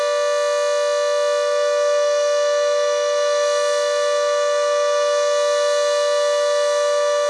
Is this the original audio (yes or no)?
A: yes